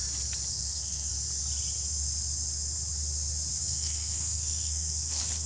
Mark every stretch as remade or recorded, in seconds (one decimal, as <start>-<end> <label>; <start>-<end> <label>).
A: 0.0-0.5 recorded; 0.5-1.1 remade; 1.1-3.5 recorded; 3.5-5.5 remade